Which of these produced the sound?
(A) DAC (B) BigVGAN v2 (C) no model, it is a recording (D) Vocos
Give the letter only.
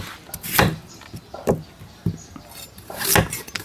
C